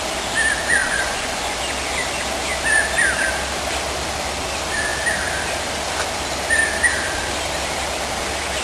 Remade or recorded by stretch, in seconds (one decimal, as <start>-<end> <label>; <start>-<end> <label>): 0.0-0.8 recorded; 0.8-1.6 remade; 1.6-8.6 recorded